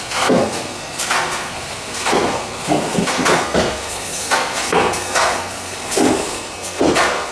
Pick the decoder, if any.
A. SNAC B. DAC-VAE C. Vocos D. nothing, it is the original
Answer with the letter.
A